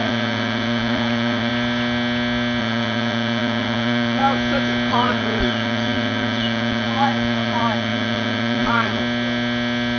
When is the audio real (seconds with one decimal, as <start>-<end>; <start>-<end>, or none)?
1.5-2.6; 4.2-4.9; 9.0-10.0